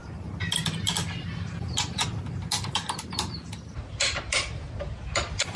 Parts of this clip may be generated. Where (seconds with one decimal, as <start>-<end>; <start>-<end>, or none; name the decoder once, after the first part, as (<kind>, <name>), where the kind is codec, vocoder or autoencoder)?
none